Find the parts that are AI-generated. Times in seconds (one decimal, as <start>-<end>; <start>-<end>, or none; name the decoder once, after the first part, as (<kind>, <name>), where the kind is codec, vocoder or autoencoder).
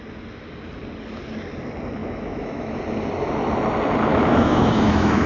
2.0-2.8 (autoencoder, DAC-VAE); 4.1-5.3